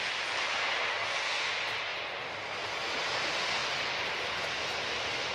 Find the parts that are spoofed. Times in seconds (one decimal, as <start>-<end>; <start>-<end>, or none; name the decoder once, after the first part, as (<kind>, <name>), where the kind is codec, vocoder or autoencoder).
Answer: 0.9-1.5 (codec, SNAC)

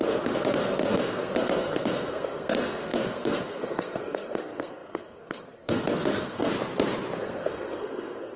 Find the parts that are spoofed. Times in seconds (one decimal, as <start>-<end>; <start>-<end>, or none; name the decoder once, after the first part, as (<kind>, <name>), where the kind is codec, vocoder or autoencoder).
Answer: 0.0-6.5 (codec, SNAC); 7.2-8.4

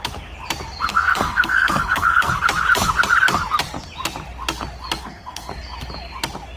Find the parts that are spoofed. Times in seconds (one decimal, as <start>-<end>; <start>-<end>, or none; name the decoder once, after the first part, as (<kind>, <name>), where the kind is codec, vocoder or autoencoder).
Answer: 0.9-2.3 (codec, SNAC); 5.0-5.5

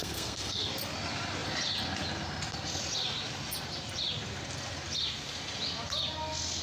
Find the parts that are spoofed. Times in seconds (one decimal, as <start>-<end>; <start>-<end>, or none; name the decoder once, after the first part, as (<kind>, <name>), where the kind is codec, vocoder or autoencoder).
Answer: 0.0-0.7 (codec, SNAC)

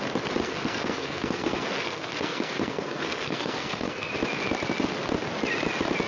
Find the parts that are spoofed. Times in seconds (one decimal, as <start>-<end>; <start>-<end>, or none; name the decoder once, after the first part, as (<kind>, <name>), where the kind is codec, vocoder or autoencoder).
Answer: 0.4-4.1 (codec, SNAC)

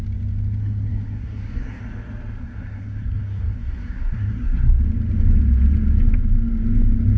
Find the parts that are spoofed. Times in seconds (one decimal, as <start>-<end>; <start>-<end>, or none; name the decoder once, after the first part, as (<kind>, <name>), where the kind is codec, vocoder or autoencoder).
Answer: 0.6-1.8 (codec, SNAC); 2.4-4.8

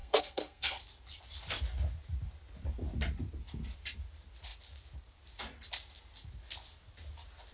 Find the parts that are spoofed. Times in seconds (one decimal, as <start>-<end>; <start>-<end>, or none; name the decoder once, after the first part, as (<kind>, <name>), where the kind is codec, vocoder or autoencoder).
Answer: 0.0-0.8 (codec, SNAC)